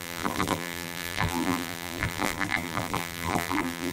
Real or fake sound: fake